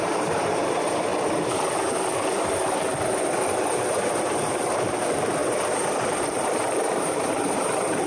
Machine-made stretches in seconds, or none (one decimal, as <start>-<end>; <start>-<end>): 0.0-1.1; 4.8-5.4; 6.2-8.1